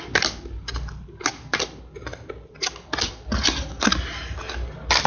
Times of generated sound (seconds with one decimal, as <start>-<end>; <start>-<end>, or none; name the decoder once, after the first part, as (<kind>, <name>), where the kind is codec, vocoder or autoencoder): none